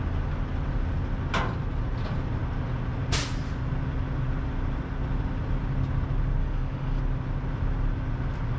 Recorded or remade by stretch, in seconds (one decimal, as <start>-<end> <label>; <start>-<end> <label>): 0.0-6.4 recorded; 6.4-7.0 remade; 7.0-8.6 recorded